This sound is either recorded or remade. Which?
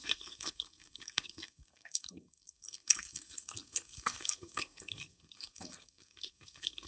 remade